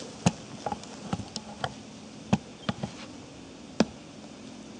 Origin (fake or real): real